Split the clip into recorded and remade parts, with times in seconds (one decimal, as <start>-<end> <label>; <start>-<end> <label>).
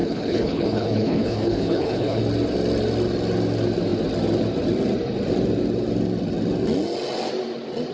0.0-2.2 remade; 2.2-7.9 recorded